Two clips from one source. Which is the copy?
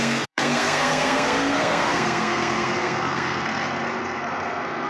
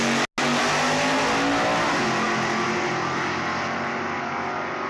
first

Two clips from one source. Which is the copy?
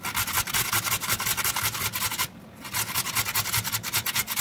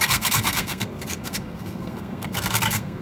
second